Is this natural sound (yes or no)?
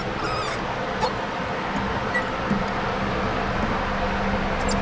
yes